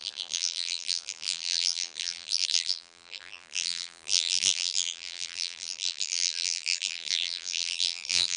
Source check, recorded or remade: remade